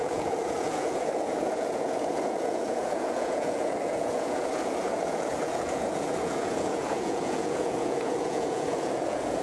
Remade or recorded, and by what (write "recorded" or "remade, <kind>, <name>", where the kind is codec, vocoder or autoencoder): remade, vocoder, Vocos